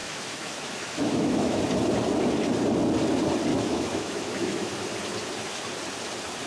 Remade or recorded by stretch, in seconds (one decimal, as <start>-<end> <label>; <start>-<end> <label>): 0.0-1.6 remade; 1.6-3.5 recorded; 3.5-4.7 remade; 4.7-6.5 recorded